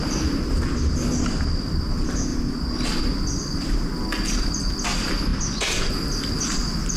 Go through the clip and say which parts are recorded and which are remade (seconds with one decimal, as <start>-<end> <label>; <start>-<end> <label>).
0.0-5.3 recorded; 5.3-5.9 remade; 5.9-7.0 recorded